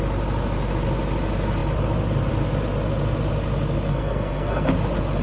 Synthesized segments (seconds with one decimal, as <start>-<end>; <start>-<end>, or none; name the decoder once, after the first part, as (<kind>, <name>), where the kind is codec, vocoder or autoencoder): 3.9-4.7 (codec, SNAC)